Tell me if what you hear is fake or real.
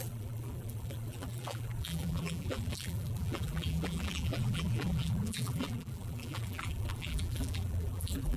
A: fake